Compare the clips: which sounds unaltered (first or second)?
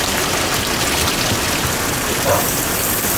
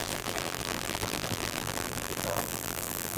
first